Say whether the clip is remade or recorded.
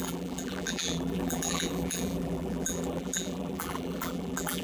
remade